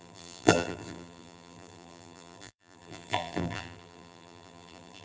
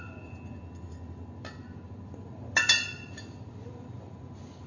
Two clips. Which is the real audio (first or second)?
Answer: second